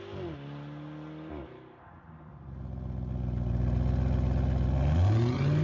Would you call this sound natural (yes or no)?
yes